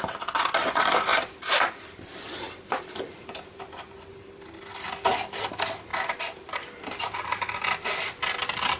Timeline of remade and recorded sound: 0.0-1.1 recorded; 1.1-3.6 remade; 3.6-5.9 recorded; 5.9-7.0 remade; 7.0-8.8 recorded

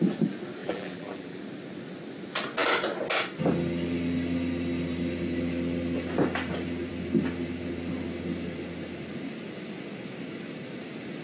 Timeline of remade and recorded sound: 0.0-0.6 recorded; 0.6-1.4 remade; 1.4-11.2 recorded

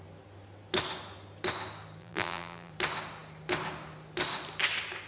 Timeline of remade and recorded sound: 0.0-2.0 recorded; 2.0-2.7 remade; 2.7-5.1 recorded

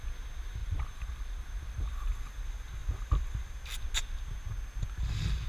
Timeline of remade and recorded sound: 0.0-0.6 recorded; 0.6-2.1 remade; 2.1-5.5 recorded

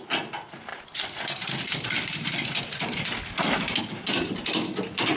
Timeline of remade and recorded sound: 0.0-0.7 recorded; 0.7-3.8 remade; 3.8-5.2 recorded